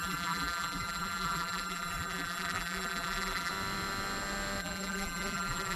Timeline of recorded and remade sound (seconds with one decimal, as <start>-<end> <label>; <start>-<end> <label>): 0.0-3.5 remade; 3.5-4.6 recorded; 4.6-5.8 remade

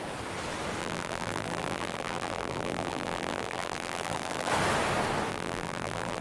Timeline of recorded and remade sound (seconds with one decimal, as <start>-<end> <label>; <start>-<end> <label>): 0.0-0.8 recorded; 0.8-4.5 remade; 4.5-5.3 recorded; 5.3-6.2 remade

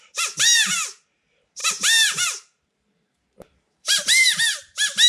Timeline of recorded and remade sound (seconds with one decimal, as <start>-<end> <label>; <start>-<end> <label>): 0.0-1.6 recorded; 1.6-5.1 remade

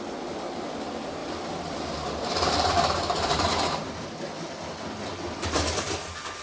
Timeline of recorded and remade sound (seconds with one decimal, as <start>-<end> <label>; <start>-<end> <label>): 0.0-1.2 recorded; 1.2-3.9 remade; 3.9-6.4 recorded

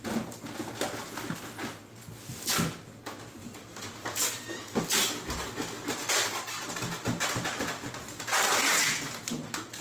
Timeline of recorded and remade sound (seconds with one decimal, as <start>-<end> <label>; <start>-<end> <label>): 0.0-2.3 recorded; 2.3-3.0 remade; 3.0-9.8 recorded

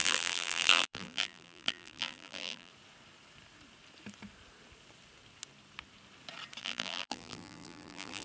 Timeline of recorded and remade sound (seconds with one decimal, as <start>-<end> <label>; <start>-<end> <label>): 0.0-2.7 remade; 2.7-6.6 recorded; 6.6-8.2 remade